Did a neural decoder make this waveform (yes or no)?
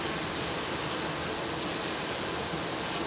no